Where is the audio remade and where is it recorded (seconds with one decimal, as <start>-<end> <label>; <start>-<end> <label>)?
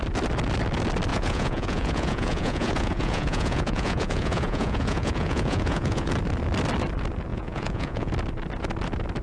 0.0-1.1 recorded; 1.1-6.1 remade; 6.1-7.3 recorded; 7.3-8.1 remade; 8.1-9.2 recorded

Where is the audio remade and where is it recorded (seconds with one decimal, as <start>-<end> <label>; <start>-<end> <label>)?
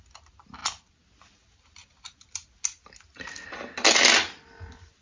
0.0-5.0 recorded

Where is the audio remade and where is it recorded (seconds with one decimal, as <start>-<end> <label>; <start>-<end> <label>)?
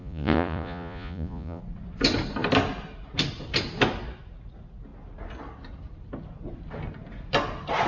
0.0-1.6 remade; 1.6-7.9 recorded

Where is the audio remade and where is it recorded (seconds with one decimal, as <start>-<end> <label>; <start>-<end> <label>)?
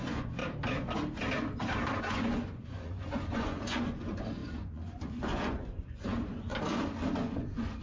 0.0-0.4 remade; 0.4-2.0 recorded; 2.0-6.5 remade; 6.5-7.1 recorded; 7.1-7.8 remade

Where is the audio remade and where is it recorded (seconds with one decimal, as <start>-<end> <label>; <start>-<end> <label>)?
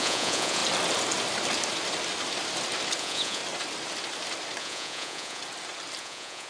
0.0-0.6 remade; 0.6-3.0 recorded; 3.0-3.4 remade; 3.4-4.6 recorded; 4.6-5.4 remade; 5.4-6.0 recorded; 6.0-6.5 remade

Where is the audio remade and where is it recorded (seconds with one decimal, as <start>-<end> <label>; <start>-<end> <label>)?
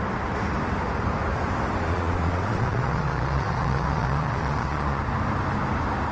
0.0-1.8 recorded; 1.8-5.0 remade; 5.0-6.1 recorded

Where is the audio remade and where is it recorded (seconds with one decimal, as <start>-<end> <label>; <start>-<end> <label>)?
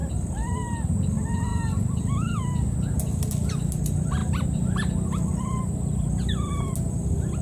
0.0-7.4 recorded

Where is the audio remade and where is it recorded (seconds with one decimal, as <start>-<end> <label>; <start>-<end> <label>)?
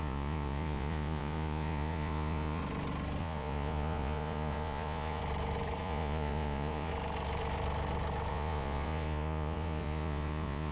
0.0-2.6 remade; 2.6-3.2 recorded; 3.2-5.2 remade; 5.2-5.8 recorded; 5.8-6.9 remade; 6.9-8.3 recorded; 8.3-10.7 remade